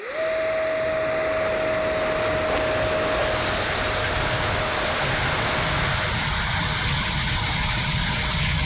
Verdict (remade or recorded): recorded